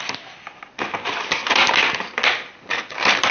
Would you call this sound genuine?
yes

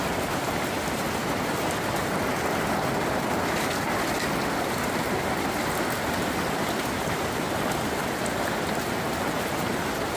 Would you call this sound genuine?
yes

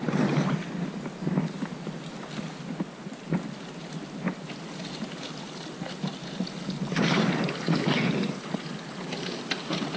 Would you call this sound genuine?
yes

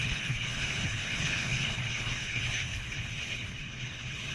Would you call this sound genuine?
no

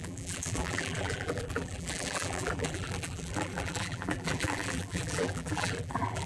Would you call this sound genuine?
no